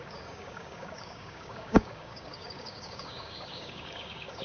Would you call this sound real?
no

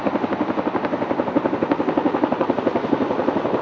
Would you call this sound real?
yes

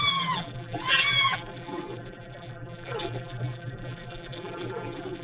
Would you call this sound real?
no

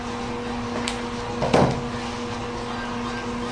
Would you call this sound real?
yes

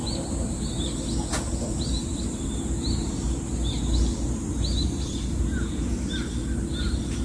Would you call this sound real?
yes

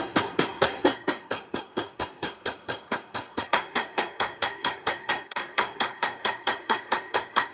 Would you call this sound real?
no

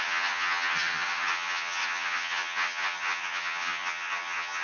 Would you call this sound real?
no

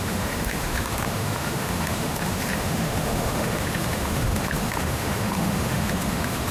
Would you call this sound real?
no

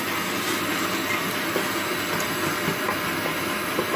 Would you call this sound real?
yes